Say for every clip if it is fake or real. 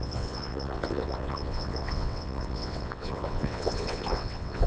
fake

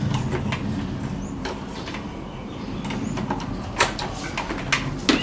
real